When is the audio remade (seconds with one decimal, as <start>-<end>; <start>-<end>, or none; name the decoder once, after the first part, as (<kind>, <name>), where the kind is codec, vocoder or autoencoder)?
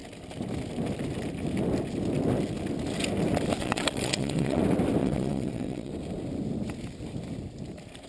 3.6-4.6 (vocoder, WaveNeXt); 5.0-5.9